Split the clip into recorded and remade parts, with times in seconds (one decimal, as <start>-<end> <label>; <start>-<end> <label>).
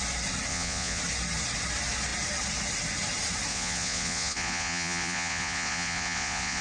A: 0.0-0.5 recorded; 0.5-1.0 remade; 1.0-3.5 recorded; 3.5-6.6 remade